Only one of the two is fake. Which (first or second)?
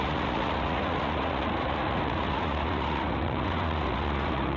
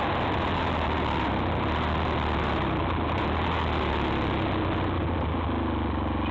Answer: first